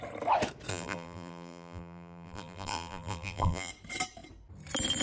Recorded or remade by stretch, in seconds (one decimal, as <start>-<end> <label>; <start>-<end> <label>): 0.0-0.7 recorded; 0.7-3.7 remade; 3.7-5.0 recorded